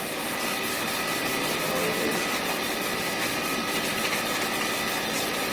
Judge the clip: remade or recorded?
recorded